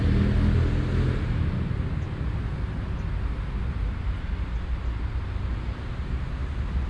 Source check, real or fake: real